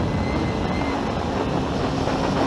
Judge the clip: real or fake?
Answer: real